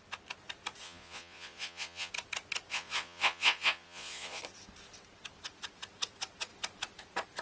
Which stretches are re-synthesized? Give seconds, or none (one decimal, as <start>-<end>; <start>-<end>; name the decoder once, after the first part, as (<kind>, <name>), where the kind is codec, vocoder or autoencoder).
0.8-2.1 (vocoder, Vocos); 2.7-4.4